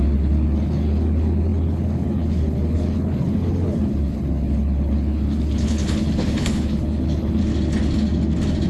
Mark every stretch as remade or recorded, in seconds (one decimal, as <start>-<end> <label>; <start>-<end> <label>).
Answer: 0.0-7.4 remade; 7.4-8.7 recorded